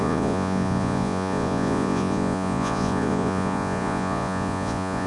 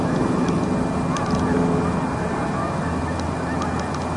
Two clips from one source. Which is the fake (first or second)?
first